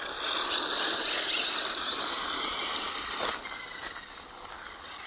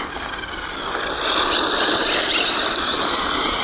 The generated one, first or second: second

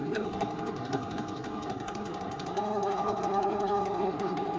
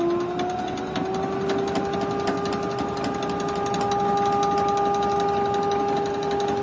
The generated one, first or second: first